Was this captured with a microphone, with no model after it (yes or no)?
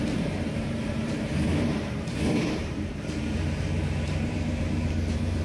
no